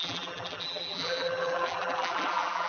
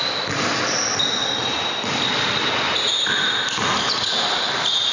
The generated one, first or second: first